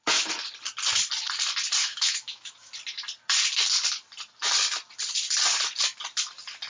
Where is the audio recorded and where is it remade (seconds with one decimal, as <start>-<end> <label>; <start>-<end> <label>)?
0.0-1.8 recorded; 1.8-2.7 remade; 2.7-6.7 recorded